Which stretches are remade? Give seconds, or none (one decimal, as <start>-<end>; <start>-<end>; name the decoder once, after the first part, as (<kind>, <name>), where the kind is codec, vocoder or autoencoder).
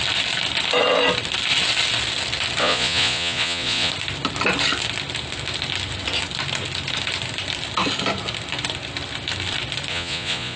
2.6-3.9 (vocoder, Vocos); 9.9-10.6